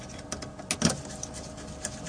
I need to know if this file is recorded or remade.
recorded